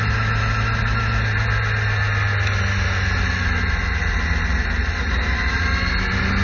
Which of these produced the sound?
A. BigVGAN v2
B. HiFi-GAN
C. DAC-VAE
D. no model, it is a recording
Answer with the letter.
D